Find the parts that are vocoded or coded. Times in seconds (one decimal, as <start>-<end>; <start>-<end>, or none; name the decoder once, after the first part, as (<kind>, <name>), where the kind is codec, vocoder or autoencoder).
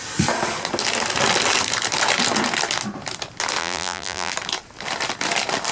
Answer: 3.6-4.3 (vocoder, BigVGAN v2)